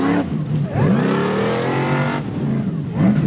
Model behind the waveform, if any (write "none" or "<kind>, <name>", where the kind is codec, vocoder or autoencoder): none